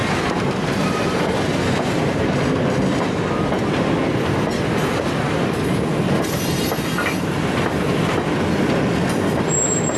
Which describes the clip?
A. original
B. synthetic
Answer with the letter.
A